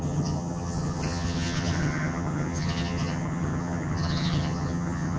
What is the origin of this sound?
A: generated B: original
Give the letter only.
A